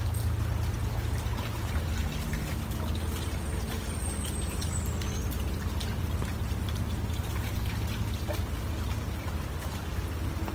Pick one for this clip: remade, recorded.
recorded